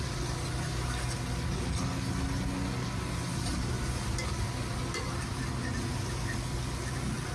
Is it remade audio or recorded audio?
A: recorded